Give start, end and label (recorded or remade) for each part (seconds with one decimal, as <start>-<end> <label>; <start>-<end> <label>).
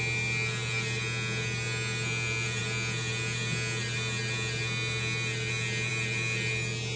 0.0-7.0 recorded